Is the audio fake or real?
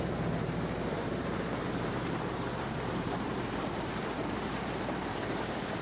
fake